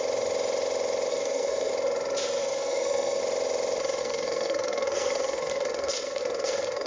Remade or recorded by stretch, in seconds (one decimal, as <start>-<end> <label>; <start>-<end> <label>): 0.0-1.1 recorded; 1.1-1.7 remade; 1.7-2.4 recorded; 2.4-3.2 remade; 3.2-4.0 recorded; 4.0-6.9 remade